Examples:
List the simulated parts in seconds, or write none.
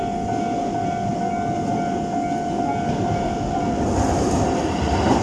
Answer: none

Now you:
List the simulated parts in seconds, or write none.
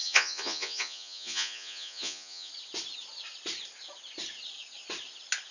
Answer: 0.0-2.5 (vocoder, Vocos)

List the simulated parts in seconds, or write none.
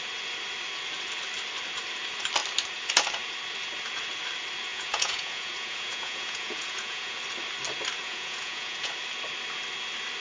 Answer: 4.7-7.2 (vocoder, Vocos); 8.0-8.9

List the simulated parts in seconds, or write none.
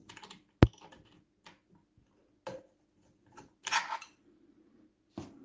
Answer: none